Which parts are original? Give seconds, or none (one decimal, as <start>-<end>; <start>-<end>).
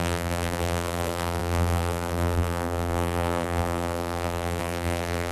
none